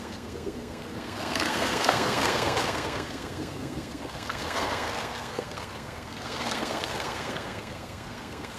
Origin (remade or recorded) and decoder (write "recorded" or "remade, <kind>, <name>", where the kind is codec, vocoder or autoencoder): remade, codec, SNAC